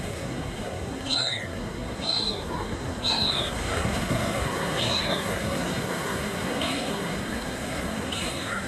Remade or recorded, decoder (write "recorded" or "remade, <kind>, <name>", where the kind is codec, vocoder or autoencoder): remade, codec, SNAC